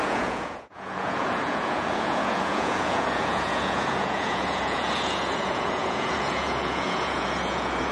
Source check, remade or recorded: remade